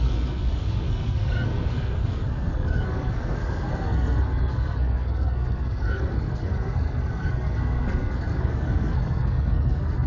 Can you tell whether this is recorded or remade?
remade